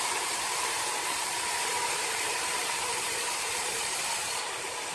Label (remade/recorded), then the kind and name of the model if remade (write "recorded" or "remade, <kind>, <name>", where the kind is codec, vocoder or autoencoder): remade, vocoder, BigVGAN v2